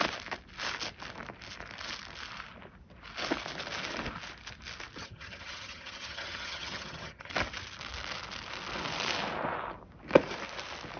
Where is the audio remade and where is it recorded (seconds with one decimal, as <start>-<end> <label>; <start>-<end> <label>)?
0.0-5.0 recorded; 5.0-7.3 remade; 7.3-11.0 recorded